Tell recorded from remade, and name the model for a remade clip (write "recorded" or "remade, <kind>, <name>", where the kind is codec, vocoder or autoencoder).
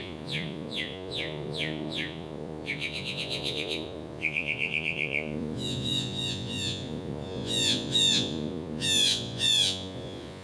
remade, vocoder, Vocos